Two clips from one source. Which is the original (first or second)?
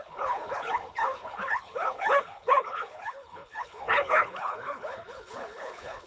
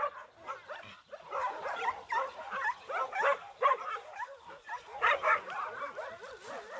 second